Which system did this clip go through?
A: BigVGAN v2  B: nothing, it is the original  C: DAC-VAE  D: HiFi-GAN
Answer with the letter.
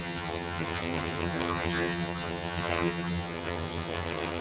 D